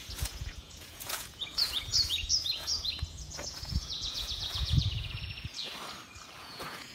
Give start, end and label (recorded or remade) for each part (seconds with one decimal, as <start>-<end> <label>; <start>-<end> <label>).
0.0-5.7 remade; 5.7-6.4 recorded; 6.4-6.9 remade